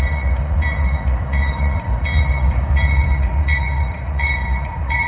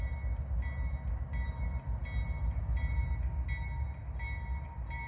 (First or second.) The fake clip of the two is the first